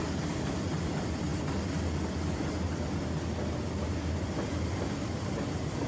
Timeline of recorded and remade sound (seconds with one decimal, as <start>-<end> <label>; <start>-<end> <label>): 0.0-5.9 recorded